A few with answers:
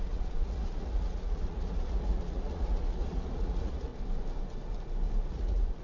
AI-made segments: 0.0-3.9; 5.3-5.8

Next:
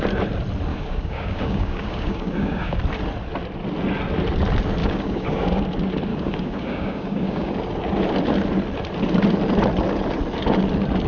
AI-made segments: 0.7-2.8; 4.8-5.6; 6.1-7.5

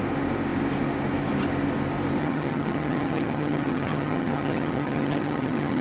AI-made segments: 2.2-5.8